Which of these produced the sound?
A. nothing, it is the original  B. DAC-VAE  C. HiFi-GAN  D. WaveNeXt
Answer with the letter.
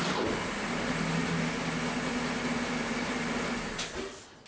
A